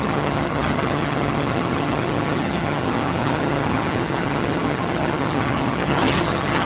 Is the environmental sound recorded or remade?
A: remade